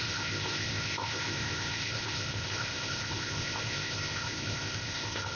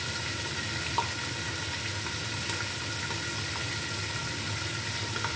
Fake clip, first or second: first